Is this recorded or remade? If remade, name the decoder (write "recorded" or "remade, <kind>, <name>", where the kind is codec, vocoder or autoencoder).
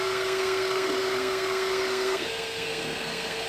remade, codec, SNAC